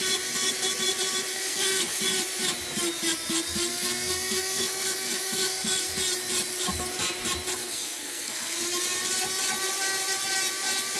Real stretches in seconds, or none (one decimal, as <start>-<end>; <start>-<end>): 0.0-1.3; 2.0-3.7; 5.9-7.5; 8.6-11.0